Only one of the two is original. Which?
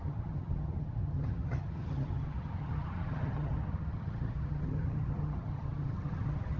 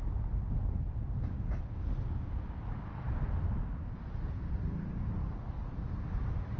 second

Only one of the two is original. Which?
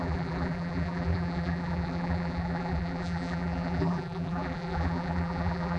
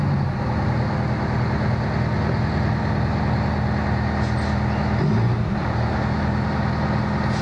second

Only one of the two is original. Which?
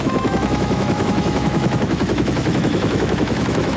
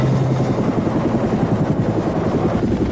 second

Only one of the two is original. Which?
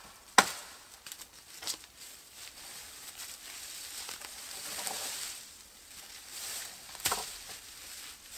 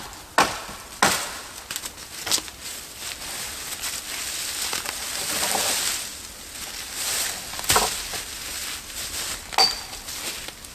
second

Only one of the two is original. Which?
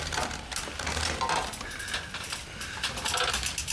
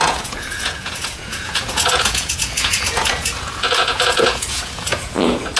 first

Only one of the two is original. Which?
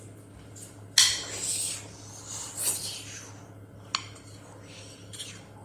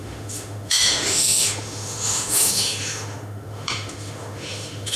first